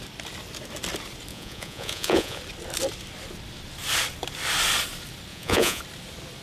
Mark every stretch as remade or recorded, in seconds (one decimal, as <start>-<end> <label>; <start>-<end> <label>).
0.0-1.3 recorded; 1.3-2.4 remade; 2.4-5.3 recorded; 5.3-5.8 remade; 5.8-6.4 recorded